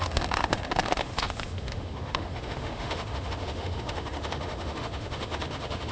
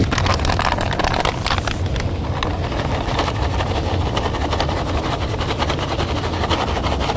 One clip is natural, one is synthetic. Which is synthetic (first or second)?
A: first